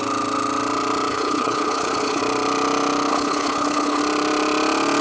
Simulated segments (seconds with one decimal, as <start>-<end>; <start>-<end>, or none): 1.1-2.2; 3.1-4.0